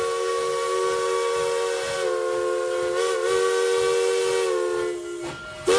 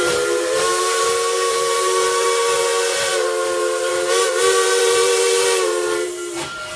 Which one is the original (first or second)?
first